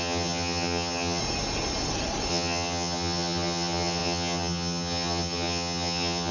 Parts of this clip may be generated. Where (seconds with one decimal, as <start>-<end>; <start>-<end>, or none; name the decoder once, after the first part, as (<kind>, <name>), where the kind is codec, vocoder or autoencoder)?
0.0-1.2 (vocoder, HiFi-GAN); 2.3-6.3